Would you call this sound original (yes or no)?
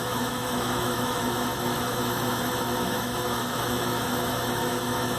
no